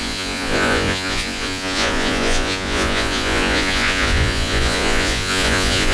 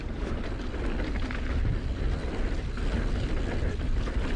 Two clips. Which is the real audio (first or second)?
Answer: second